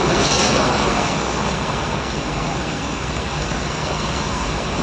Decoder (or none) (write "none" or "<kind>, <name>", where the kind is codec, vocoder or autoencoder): codec, SNAC